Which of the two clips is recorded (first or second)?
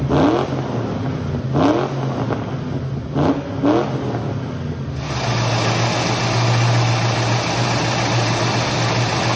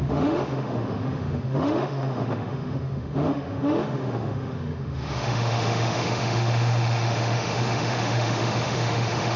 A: first